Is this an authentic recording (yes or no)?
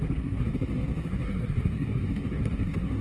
no